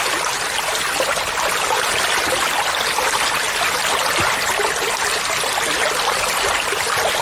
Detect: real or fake real